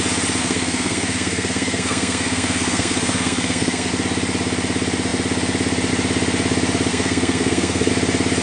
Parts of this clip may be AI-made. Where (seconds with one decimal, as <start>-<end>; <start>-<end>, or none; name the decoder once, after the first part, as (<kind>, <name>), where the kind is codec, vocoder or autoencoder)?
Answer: 0.4-3.9 (codec, SNAC); 6.9-7.9